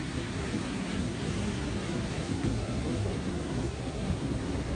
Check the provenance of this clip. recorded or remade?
remade